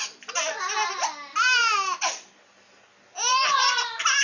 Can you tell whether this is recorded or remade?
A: recorded